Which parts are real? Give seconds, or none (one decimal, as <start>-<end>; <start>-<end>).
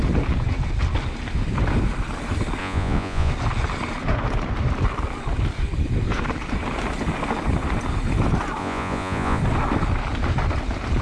0.0-2.6; 3.3-8.6; 9.4-11.0